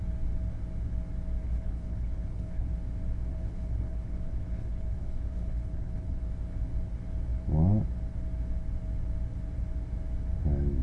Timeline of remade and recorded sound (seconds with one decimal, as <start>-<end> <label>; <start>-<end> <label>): 0.0-1.4 recorded; 1.4-2.7 remade; 2.7-3.3 recorded; 3.3-6.3 remade; 6.3-10.8 recorded